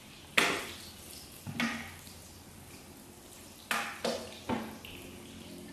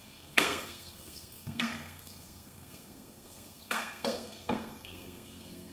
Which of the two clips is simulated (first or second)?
second